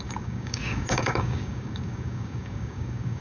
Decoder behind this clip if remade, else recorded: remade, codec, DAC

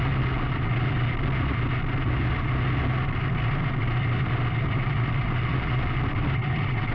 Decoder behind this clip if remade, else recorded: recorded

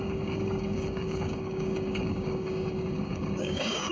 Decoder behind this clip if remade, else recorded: remade, codec, DAC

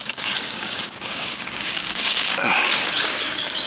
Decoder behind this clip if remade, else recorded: remade, codec, DAC